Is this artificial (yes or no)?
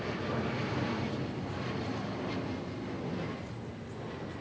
no